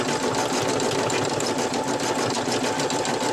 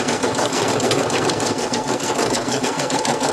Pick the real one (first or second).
first